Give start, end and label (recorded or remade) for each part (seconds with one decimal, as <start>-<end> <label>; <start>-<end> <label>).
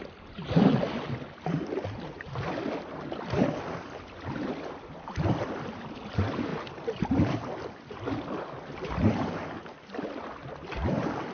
0.0-11.3 recorded